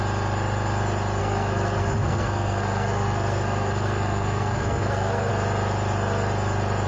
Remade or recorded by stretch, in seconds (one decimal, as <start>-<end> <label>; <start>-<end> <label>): 0.0-1.2 recorded; 1.2-5.3 remade; 5.3-6.9 recorded